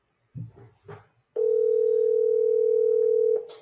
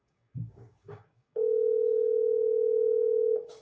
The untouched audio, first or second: first